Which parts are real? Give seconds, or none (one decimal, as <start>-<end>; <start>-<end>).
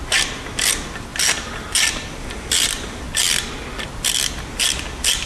0.0-5.3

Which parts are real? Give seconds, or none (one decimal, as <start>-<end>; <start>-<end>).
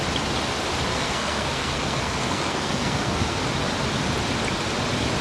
0.0-0.9; 3.4-5.2